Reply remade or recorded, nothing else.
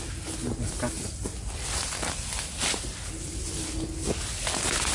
recorded